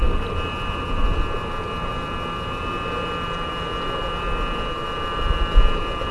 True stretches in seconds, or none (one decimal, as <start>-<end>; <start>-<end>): 0.0-6.1